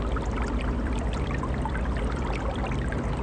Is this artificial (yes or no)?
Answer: no